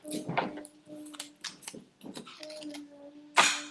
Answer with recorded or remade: recorded